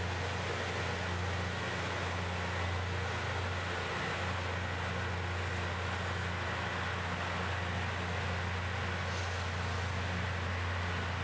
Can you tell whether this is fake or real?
real